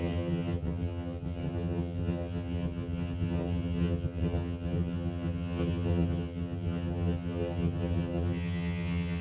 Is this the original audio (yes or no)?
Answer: no